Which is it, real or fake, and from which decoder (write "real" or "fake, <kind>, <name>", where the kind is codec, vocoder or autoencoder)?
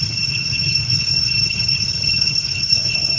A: fake, codec, HILCodec